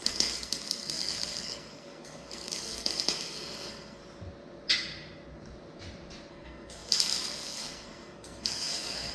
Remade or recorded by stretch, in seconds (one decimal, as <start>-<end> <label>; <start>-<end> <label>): 0.0-4.0 remade; 4.0-6.3 recorded; 6.3-9.1 remade